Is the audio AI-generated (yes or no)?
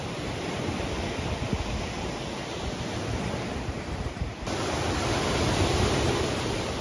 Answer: yes